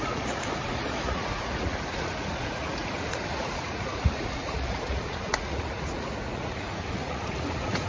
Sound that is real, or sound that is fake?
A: fake